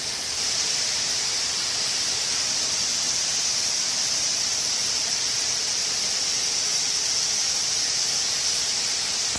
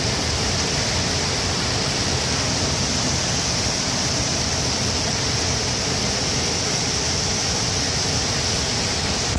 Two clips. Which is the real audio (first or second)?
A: second